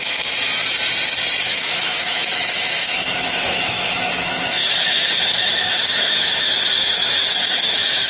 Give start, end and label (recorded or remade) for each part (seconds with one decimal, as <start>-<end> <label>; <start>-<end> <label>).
0.0-1.4 recorded; 1.4-8.1 remade